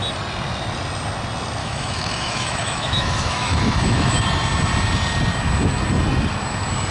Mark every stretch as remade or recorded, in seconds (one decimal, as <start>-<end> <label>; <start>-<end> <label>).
0.0-1.6 recorded; 1.6-4.2 remade; 4.2-6.9 recorded